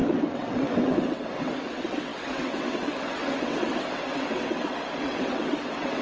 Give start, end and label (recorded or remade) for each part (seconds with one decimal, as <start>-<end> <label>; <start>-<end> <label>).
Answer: 0.0-6.0 remade